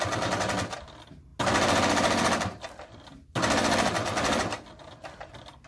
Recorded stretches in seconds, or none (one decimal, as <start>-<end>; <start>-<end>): 0.0-5.7

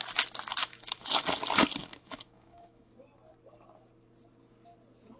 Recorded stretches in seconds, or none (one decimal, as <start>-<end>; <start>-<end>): 0.0-0.6; 1.2-1.8; 2.9-5.2